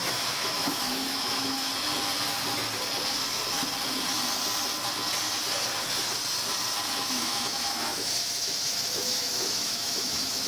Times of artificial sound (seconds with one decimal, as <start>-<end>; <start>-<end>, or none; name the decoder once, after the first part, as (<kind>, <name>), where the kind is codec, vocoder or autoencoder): 0.0-1.7 (autoencoder, DAC-VAE); 7.0-10.5